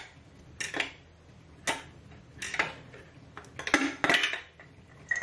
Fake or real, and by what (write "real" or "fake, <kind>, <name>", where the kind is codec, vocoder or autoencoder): real